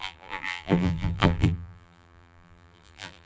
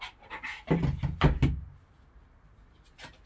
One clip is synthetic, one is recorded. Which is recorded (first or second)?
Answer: second